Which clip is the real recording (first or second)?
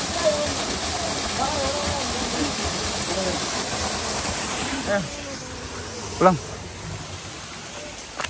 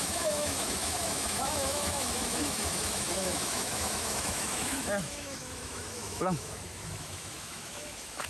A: first